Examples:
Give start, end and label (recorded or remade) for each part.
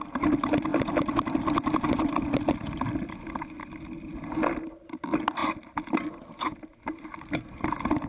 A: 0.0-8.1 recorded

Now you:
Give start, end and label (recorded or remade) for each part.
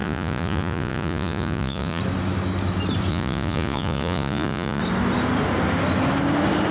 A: 0.0-2.0 remade; 2.0-3.1 recorded; 3.1-4.8 remade; 4.8-6.7 recorded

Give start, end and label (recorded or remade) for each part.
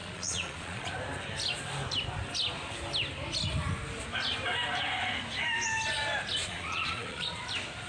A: 0.0-0.9 remade; 0.9-6.4 recorded; 6.4-7.4 remade; 7.4-7.9 recorded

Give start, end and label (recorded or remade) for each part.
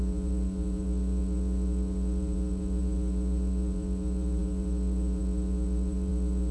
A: 0.0-6.5 remade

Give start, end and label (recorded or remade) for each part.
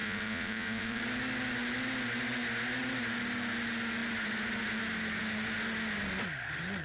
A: 0.0-1.0 remade; 1.0-6.8 recorded